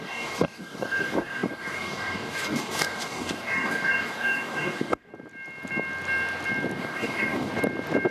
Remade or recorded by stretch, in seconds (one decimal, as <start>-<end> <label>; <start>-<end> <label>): 0.0-5.1 remade; 5.1-6.8 recorded; 6.8-7.5 remade; 7.5-8.1 recorded